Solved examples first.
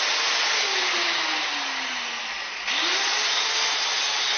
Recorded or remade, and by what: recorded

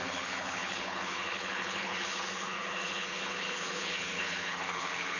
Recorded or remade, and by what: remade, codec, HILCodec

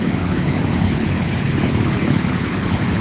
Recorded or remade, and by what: remade, codec, HILCodec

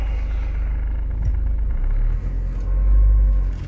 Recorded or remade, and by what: recorded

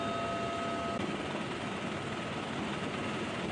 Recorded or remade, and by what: recorded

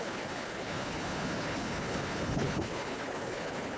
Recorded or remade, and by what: remade, codec, HILCodec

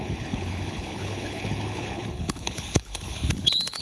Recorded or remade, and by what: remade, codec, HILCodec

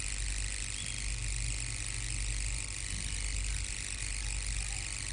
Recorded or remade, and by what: recorded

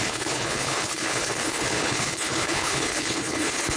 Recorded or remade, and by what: remade, codec, HILCodec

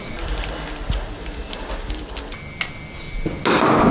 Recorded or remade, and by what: recorded